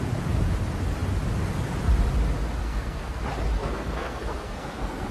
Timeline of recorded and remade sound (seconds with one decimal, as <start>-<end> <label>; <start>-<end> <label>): 0.0-2.6 recorded; 2.6-3.2 remade; 3.2-3.6 recorded; 3.6-5.1 remade